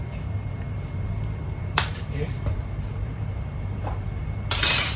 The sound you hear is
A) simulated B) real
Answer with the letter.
A